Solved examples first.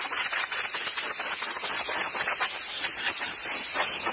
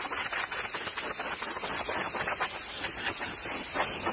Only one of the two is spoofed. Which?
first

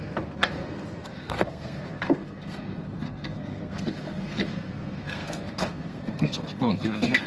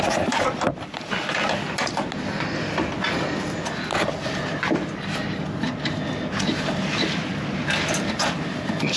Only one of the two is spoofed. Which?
first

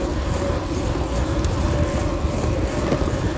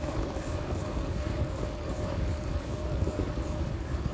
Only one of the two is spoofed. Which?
second